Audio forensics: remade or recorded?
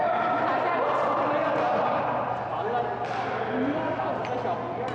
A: recorded